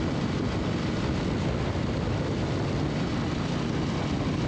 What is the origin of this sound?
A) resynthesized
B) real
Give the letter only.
B